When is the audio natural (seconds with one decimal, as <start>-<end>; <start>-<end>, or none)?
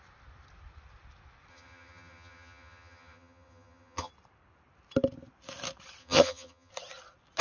0.0-1.5; 4.1-6.0; 6.7-7.4